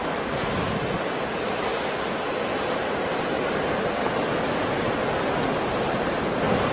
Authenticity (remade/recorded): recorded